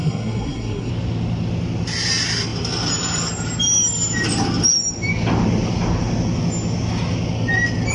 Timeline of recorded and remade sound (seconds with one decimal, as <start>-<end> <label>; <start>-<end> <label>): 0.0-0.9 remade; 0.9-7.9 recorded